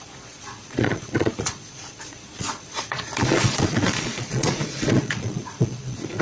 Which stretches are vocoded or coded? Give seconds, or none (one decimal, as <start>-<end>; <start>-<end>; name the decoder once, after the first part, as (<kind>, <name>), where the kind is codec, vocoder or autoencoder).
0.0-6.2 (vocoder, Vocos)